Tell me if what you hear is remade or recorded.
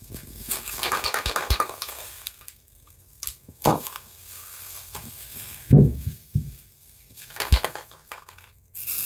remade